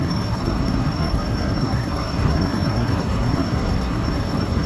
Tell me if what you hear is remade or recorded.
remade